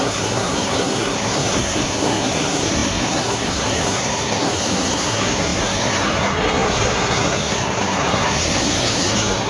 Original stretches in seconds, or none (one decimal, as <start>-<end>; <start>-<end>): none